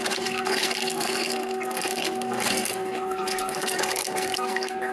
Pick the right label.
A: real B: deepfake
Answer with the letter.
B